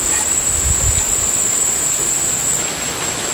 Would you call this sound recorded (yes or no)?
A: yes